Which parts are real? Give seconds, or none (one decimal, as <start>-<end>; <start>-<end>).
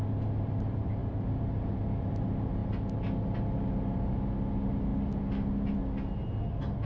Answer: 0.0-6.9